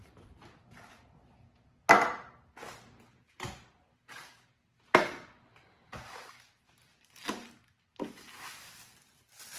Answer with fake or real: real